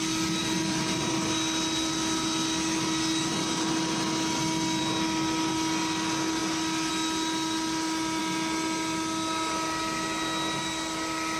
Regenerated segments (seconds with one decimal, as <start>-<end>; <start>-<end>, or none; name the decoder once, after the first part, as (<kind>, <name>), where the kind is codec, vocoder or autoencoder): 0.4-1.2 (vocoder, BigVGAN v2)

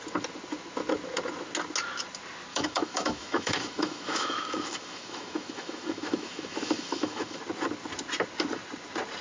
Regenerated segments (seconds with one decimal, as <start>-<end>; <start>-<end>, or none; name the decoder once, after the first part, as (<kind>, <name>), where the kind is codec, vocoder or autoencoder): 2.5-7.4 (autoencoder, DAC-VAE)

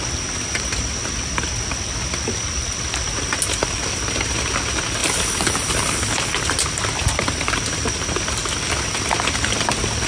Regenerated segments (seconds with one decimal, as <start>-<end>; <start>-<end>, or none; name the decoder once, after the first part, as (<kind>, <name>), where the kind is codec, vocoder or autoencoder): none

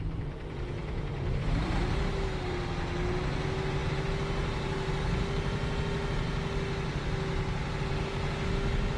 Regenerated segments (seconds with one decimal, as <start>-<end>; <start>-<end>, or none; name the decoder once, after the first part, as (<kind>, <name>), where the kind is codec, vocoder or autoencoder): 0.8-2.8 (vocoder, BigVGAN v2)

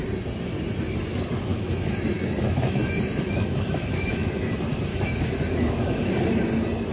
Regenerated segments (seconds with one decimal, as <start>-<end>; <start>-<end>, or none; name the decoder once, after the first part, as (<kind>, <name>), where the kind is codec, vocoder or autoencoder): 1.5-4.5 (autoencoder, DAC-VAE); 4.9-6.1